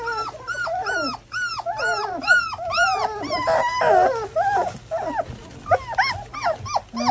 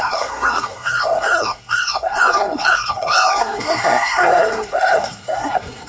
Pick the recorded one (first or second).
first